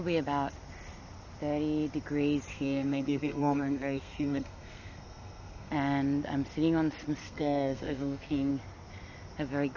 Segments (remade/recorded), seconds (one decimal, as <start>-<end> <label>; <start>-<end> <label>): 0.0-2.5 recorded; 2.5-5.7 remade; 5.7-7.2 recorded; 7.2-8.5 remade; 8.5-9.8 recorded